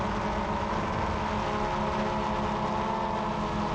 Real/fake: real